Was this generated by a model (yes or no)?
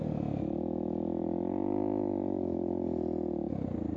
no